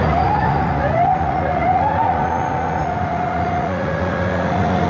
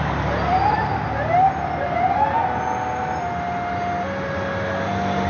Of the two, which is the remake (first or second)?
first